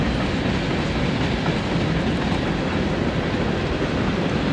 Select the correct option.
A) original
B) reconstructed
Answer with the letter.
A